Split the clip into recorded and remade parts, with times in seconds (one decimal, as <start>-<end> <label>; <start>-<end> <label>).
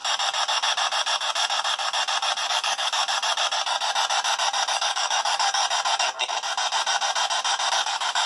0.0-2.5 recorded; 2.5-3.0 remade; 3.0-4.7 recorded; 4.7-5.6 remade; 5.6-7.7 recorded; 7.7-8.3 remade